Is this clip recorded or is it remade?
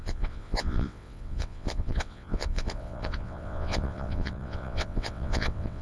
remade